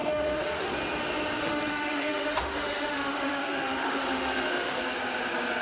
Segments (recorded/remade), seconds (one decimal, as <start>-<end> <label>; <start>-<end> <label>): 0.0-0.7 remade; 0.7-1.4 recorded; 1.4-4.8 remade; 4.8-5.6 recorded

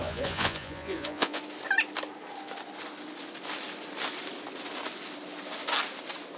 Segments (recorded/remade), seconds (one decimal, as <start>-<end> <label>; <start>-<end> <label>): 0.0-1.4 remade; 1.4-6.4 recorded

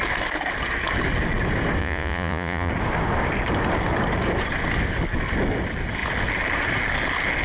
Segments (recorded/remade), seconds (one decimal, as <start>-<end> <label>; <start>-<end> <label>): 0.0-1.8 recorded; 1.8-2.7 remade; 2.7-7.4 recorded

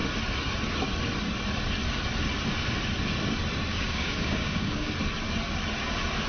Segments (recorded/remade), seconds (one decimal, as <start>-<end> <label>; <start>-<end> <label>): 0.0-3.7 recorded; 3.7-4.9 remade; 4.9-6.3 recorded